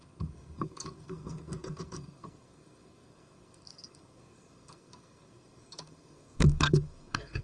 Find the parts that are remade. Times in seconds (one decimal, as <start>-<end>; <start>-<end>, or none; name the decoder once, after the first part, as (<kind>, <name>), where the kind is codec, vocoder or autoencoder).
0.0-7.4 (codec, SNAC)